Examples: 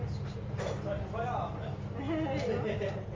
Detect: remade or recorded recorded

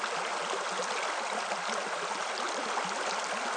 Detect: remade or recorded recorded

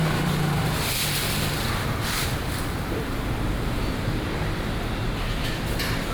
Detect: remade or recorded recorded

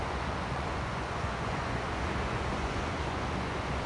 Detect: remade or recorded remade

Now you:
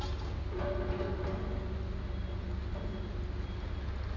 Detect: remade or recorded recorded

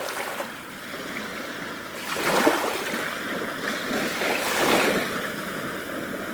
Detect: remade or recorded recorded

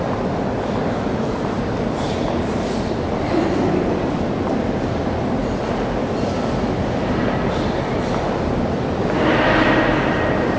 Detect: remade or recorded remade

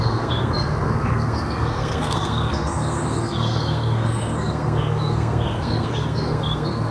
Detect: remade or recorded remade